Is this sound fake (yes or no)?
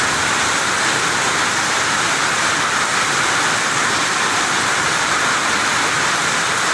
no